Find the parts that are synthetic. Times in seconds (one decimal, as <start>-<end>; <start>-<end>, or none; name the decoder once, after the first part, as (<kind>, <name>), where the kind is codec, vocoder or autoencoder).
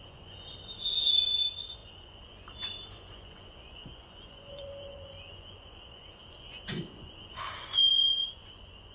0.0-8.9 (vocoder, Vocos)